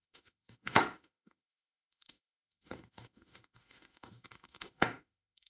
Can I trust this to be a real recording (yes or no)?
no